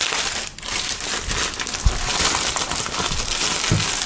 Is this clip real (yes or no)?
yes